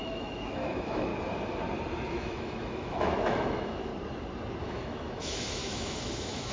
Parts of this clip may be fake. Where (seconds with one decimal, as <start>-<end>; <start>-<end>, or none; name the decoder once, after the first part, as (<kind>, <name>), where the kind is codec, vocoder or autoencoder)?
0.0-1.1 (autoencoder, DAC-VAE); 2.1-3.9; 4.6-6.5